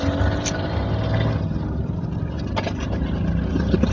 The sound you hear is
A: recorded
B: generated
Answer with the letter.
A